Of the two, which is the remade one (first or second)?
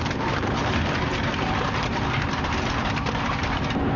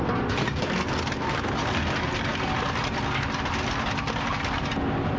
first